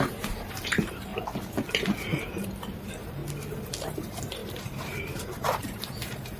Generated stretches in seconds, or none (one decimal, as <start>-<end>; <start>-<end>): 0.0-1.1; 2.8-3.2; 3.8-6.4